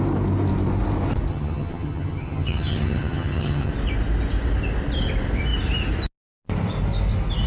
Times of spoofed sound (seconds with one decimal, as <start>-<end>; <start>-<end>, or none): 1.3-3.7